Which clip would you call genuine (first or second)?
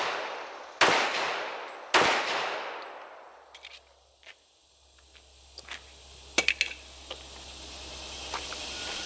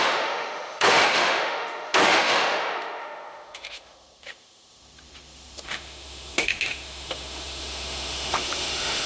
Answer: first